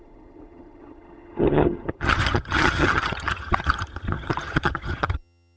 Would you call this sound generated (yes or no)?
yes